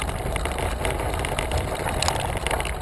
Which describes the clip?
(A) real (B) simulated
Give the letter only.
A